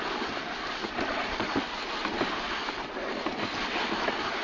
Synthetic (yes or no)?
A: no